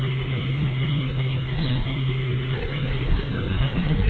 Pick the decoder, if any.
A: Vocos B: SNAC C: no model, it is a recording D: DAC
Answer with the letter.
B